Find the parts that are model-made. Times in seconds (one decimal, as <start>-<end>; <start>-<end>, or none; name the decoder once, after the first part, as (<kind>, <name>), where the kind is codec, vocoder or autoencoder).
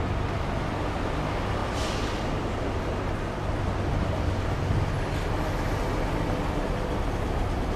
1.6-2.3 (vocoder, BigVGAN v2)